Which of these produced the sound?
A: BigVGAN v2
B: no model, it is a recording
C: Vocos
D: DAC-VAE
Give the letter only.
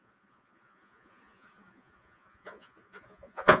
C